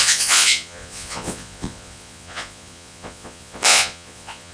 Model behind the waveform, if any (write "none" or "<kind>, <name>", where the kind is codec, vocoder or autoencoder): vocoder, Vocos